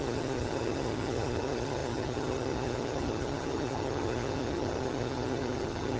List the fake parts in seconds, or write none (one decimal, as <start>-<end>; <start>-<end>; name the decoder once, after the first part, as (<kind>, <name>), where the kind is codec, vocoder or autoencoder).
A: 0.0-6.0 (vocoder, HiFi-GAN)